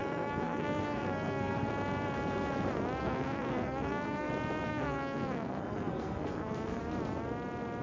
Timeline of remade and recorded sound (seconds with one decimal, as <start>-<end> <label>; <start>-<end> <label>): 0.0-1.7 remade; 1.7-3.0 recorded; 3.0-4.3 remade; 4.3-4.7 recorded; 4.7-6.8 remade; 6.8-7.8 recorded